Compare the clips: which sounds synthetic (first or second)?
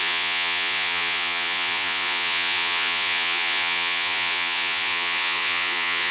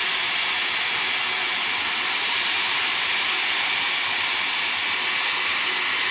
first